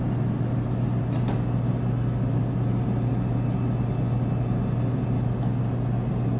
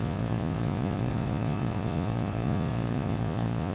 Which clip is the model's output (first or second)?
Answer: second